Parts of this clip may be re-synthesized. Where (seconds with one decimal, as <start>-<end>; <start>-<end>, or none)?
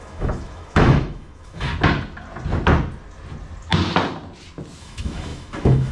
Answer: 0.0-1.7; 4.8-5.9